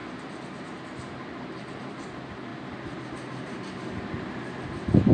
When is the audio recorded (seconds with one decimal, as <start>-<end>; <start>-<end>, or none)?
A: 0.0-5.1